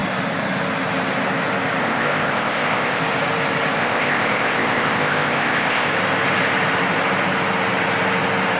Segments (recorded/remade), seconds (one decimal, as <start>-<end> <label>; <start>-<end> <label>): 0.0-1.8 recorded; 1.8-3.0 remade; 3.0-3.8 recorded; 3.8-5.9 remade; 5.9-8.6 recorded